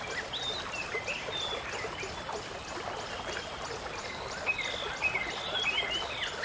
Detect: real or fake real